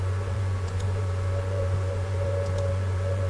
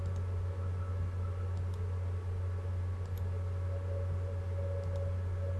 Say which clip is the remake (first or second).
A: first